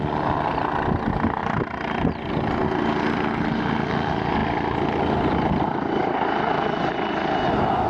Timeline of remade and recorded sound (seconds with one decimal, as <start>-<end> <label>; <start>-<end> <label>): 0.0-7.9 recorded